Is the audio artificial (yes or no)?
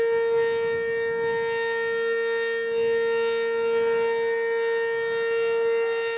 no